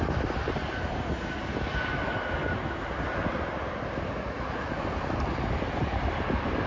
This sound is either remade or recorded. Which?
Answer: recorded